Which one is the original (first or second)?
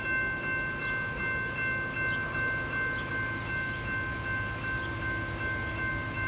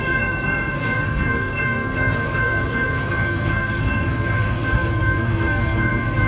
first